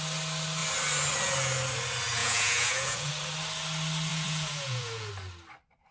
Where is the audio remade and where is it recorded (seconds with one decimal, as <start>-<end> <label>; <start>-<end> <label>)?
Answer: 0.0-2.2 recorded; 2.2-3.1 remade; 3.1-4.1 recorded; 4.1-5.1 remade; 5.1-5.9 recorded